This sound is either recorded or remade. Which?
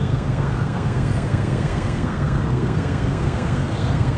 remade